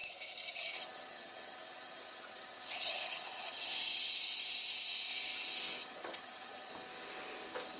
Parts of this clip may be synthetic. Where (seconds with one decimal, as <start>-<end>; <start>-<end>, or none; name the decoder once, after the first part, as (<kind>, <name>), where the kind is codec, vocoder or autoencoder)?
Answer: 0.0-3.7 (vocoder, HiFi-GAN); 5.8-6.7